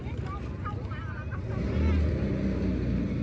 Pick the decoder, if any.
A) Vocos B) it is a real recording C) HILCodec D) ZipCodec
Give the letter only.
B